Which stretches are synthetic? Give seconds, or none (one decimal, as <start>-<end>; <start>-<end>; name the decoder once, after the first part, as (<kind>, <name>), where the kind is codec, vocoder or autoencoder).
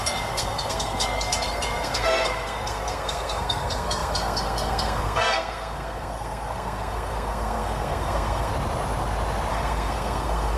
0.0-8.5 (codec, SNAC); 9.5-10.6